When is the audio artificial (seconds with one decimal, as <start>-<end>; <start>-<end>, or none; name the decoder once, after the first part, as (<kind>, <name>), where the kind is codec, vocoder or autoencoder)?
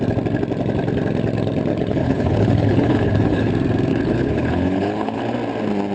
1.7-3.5 (codec, HILCodec); 3.9-5.2